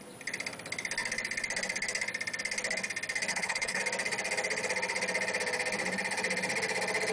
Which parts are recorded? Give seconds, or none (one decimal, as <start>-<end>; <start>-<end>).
0.0-3.3; 3.8-7.1